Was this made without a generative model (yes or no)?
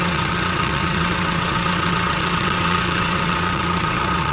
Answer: no